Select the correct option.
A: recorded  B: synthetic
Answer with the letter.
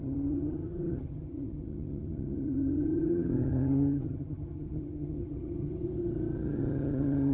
B